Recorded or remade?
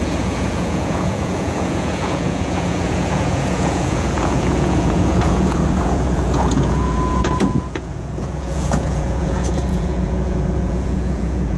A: remade